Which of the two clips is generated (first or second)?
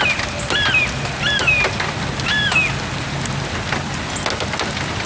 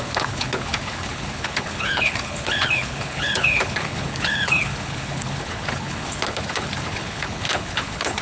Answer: second